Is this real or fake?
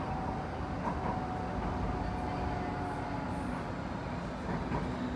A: real